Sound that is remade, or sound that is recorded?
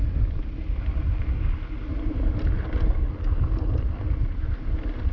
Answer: recorded